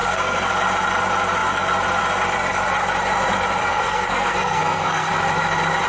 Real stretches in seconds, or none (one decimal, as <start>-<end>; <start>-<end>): 0.5-3.6; 5.1-5.9

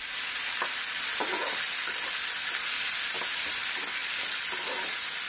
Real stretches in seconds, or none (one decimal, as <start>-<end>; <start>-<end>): 0.0-5.3

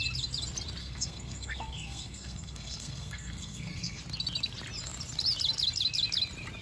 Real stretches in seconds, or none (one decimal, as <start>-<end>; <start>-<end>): 0.0-0.8; 4.0-6.6

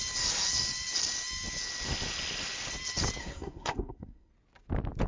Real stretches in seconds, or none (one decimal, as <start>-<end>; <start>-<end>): 0.0-3.2; 4.3-5.1